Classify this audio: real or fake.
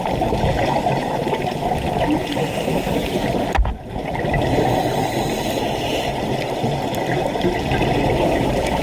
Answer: real